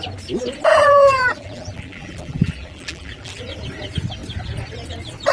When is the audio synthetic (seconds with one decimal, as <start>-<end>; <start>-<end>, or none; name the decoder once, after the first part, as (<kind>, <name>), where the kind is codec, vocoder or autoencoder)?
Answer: 0.7-3.4 (vocoder, BigVGAN v2)